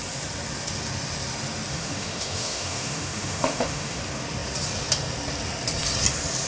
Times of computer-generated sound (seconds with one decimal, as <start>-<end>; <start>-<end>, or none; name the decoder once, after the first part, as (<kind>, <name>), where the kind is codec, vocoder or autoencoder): 1.7-4.0 (autoencoder, DAC-VAE)

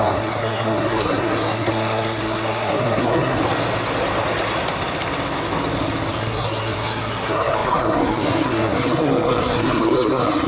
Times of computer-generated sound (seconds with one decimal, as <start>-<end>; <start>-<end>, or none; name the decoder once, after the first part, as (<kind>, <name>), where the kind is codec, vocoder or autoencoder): 0.0-3.4 (codec, SNAC); 6.2-10.5